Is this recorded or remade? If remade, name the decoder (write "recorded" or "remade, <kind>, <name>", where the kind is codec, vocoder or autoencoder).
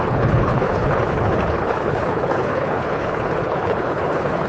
remade, codec, HILCodec